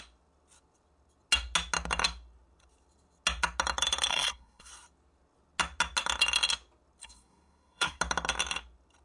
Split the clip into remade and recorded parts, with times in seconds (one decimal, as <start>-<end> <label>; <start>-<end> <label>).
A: 0.0-4.1 recorded; 4.1-4.7 remade; 4.7-7.0 recorded; 7.0-8.0 remade; 8.0-9.0 recorded

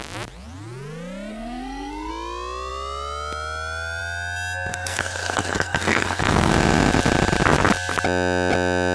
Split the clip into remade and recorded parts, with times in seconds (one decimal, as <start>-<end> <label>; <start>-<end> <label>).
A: 0.0-1.3 recorded; 1.3-2.1 remade; 2.1-4.7 recorded; 4.7-6.5 remade; 6.5-8.9 recorded